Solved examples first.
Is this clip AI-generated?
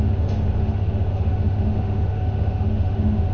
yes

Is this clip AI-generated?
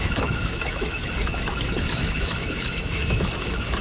yes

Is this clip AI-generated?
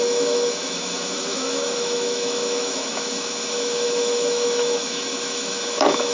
yes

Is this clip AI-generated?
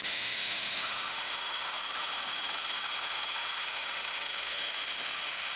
yes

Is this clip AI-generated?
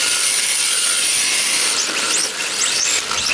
no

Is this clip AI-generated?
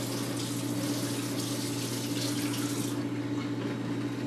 no